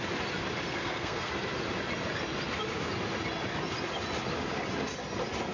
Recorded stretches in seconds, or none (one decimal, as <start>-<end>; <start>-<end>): 0.0-0.7; 1.3-5.5